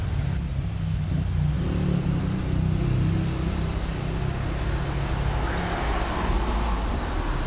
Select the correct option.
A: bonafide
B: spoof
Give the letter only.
A